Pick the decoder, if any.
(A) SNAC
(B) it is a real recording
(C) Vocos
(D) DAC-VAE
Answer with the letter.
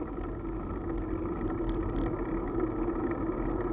B